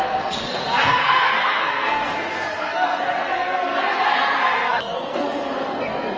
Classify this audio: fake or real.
fake